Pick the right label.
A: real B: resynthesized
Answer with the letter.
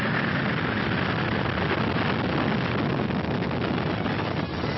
A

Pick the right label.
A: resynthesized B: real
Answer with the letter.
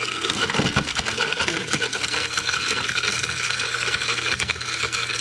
A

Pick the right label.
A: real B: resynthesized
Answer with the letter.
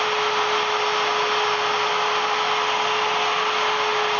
A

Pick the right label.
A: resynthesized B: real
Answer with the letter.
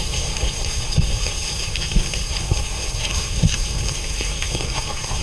A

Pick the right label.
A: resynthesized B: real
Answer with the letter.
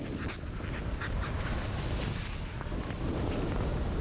B